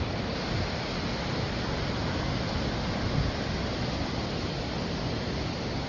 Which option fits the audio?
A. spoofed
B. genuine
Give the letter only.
B